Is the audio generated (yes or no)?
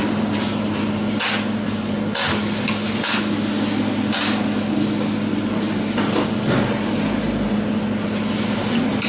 no